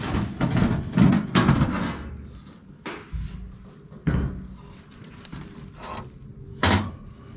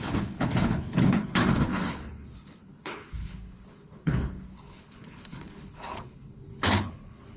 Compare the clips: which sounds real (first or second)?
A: first